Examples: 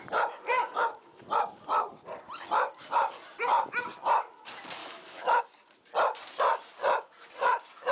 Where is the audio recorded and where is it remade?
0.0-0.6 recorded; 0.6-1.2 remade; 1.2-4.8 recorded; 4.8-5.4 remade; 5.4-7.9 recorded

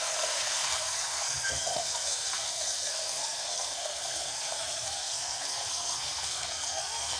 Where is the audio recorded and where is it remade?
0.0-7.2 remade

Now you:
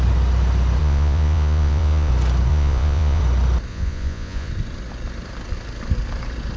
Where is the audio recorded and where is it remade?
0.0-0.8 recorded; 0.8-2.1 remade; 2.1-2.5 recorded; 2.5-3.2 remade; 3.2-3.7 recorded; 3.7-4.5 remade; 4.5-6.6 recorded

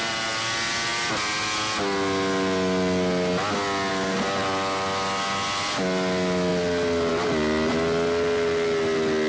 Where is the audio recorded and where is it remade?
0.0-9.3 recorded